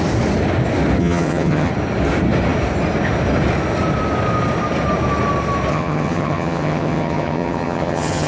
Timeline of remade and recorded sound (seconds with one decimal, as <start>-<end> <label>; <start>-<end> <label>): 0.0-1.0 recorded; 1.0-1.7 remade; 1.7-5.7 recorded; 5.7-8.3 remade